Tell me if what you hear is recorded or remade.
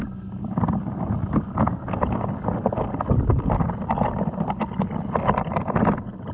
recorded